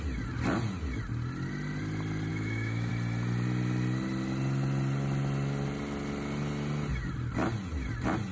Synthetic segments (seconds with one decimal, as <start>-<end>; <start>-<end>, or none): 2.3-2.9